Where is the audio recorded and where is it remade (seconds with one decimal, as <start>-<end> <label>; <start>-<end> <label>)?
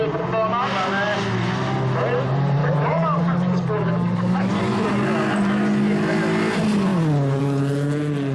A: 0.0-2.6 recorded; 2.6-4.5 remade; 4.5-8.3 recorded